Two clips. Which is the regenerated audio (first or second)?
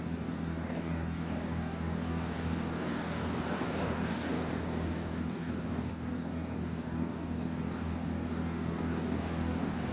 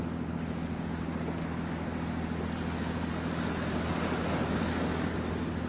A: first